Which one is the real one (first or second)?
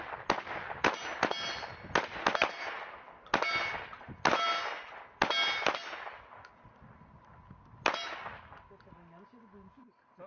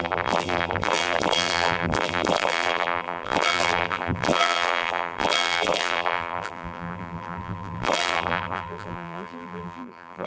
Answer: first